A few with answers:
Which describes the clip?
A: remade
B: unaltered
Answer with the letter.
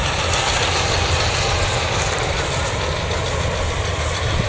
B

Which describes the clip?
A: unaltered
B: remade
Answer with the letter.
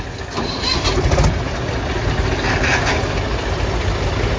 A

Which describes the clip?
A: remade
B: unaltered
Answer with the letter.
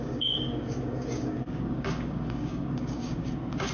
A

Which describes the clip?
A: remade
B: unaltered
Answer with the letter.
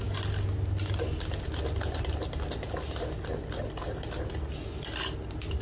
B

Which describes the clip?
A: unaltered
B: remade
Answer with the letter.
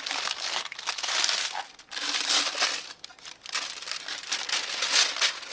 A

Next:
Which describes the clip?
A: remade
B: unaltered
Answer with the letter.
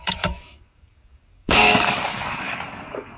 A